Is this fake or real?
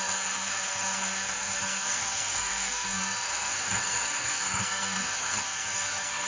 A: fake